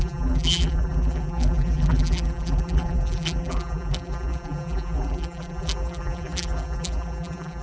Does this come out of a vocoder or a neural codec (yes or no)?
yes